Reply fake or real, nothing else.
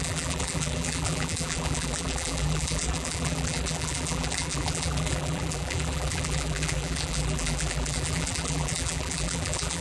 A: fake